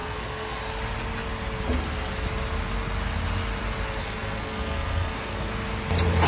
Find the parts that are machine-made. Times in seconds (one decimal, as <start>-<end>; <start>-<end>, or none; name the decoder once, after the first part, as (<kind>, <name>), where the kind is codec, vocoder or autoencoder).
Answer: 0.0-0.6 (codec, SNAC); 4.0-5.5